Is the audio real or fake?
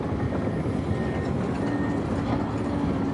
real